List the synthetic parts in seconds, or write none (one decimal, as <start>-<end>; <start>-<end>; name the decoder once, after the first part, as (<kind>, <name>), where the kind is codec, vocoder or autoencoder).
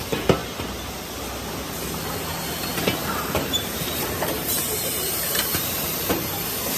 3.0-6.1 (vocoder, BigVGAN v2)